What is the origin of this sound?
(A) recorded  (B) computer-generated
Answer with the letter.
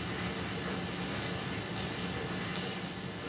A